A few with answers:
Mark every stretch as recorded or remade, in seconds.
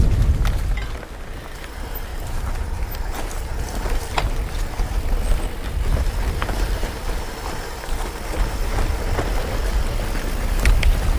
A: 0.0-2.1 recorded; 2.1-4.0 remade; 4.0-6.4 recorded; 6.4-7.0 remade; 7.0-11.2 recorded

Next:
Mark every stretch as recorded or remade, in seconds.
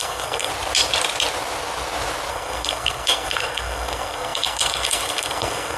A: 0.0-0.5 remade; 0.5-2.3 recorded; 2.3-5.8 remade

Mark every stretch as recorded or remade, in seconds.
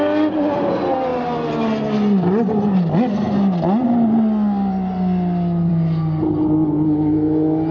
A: 0.0-7.7 recorded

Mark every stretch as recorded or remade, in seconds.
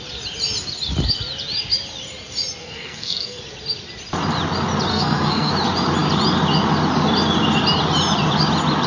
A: 0.0-2.6 recorded; 2.6-3.4 remade; 3.4-4.9 recorded; 4.9-5.5 remade; 5.5-8.9 recorded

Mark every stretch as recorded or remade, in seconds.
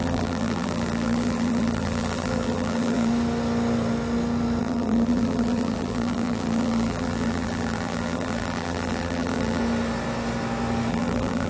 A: 0.0-3.1 remade; 3.1-4.6 recorded; 4.6-9.6 remade; 9.6-10.9 recorded; 10.9-11.5 remade